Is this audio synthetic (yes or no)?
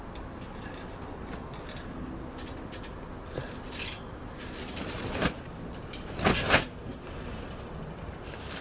no